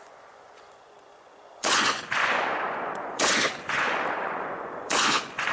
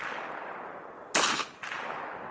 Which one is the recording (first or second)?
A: second